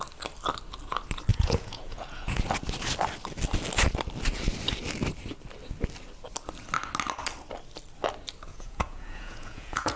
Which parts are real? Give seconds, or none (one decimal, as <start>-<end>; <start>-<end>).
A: 0.0-1.3; 2.4-8.5